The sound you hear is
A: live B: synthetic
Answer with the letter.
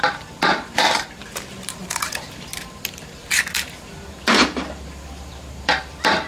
B